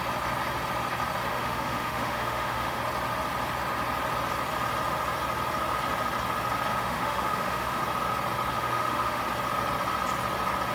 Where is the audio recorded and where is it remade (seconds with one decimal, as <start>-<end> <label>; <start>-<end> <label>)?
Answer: 0.0-1.3 recorded; 1.3-2.8 remade; 2.8-6.7 recorded; 6.7-7.8 remade; 7.8-8.5 recorded; 8.5-9.2 remade; 9.2-10.7 recorded